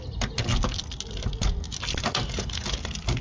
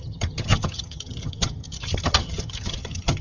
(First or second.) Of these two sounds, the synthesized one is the second